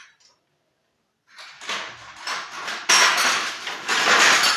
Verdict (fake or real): real